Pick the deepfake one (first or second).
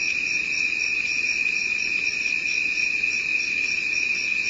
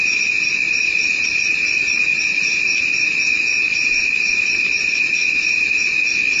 second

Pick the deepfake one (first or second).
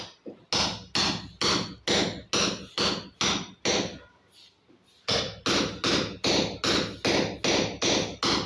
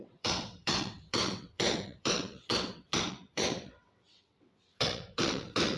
second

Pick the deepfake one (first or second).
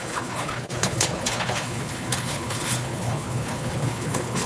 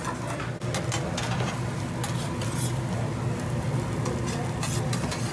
first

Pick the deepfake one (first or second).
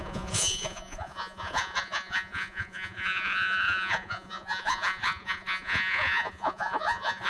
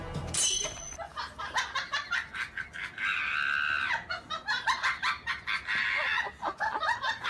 first